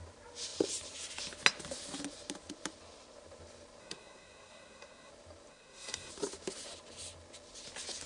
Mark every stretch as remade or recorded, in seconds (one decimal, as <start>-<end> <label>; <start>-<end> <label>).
0.0-3.8 recorded; 3.8-5.1 remade; 5.1-5.5 recorded; 5.5-6.1 remade; 6.1-8.1 recorded